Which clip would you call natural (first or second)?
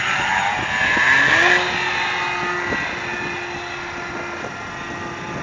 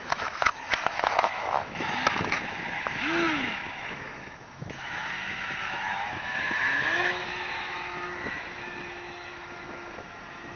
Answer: first